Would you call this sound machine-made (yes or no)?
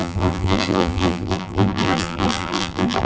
yes